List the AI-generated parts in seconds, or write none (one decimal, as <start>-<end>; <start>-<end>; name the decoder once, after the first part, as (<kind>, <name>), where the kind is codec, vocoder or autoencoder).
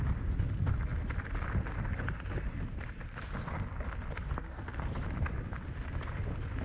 none